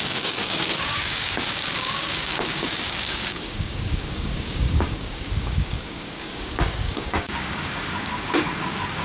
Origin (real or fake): fake